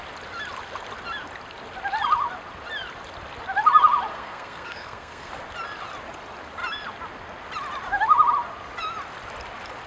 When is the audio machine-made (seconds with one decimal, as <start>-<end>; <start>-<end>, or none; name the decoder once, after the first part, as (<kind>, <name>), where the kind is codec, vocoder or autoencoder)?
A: 4.1-5.3 (codec, SNAC)